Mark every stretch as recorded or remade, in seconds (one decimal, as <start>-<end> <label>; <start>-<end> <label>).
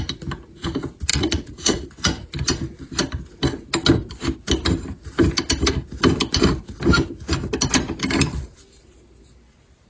0.0-1.1 recorded; 1.1-1.9 remade; 1.9-9.9 recorded